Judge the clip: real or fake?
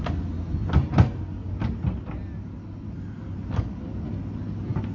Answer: real